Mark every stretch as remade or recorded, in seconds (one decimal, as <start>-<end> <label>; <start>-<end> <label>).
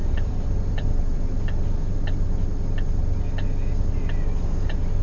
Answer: 0.0-1.6 remade; 1.6-5.0 recorded